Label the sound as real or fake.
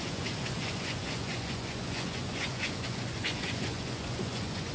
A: fake